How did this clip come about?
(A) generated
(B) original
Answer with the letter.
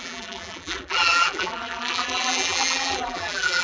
A